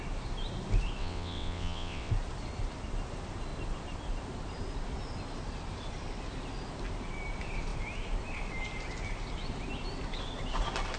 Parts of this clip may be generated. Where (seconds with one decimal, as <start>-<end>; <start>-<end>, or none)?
1.0-2.1